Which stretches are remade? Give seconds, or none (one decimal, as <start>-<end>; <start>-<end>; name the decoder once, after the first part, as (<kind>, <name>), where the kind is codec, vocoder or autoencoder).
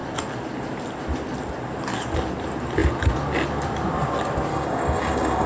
4.5-5.5 (codec, DAC)